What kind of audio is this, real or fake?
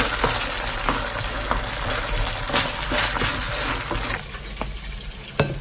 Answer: real